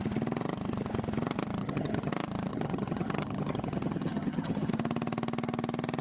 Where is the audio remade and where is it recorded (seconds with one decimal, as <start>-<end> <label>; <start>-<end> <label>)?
0.0-1.6 recorded; 1.6-2.1 remade; 2.1-2.5 recorded; 2.5-4.7 remade; 4.7-6.0 recorded